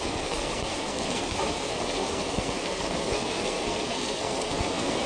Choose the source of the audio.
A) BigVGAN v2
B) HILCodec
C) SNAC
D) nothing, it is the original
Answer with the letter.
C